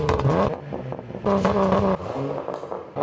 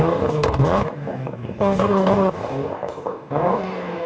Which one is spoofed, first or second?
second